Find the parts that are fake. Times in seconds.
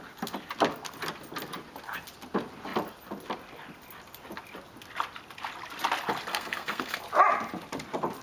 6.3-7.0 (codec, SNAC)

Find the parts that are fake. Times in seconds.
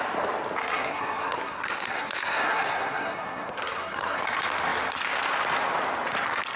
0.6-4.2 (codec, SNAC)